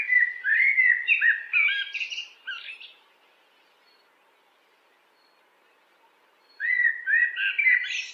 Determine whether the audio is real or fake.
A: real